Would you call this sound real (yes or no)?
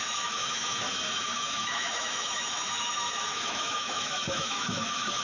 no